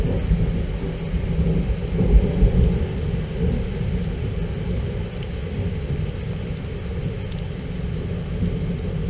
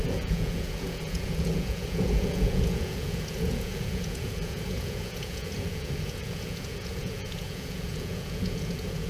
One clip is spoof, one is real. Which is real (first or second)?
first